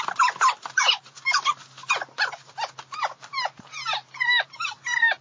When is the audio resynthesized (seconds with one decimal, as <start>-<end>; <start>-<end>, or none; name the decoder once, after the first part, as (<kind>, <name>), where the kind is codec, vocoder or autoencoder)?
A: none